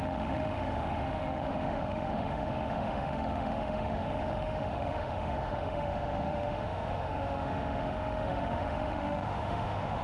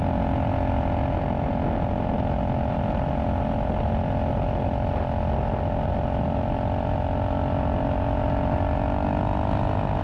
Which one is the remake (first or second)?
first